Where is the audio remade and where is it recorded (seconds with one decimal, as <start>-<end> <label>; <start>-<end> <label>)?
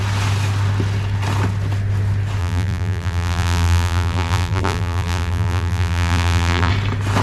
0.0-2.4 recorded; 2.4-6.7 remade; 6.7-7.2 recorded